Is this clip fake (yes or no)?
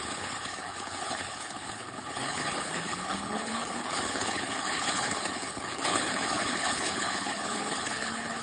yes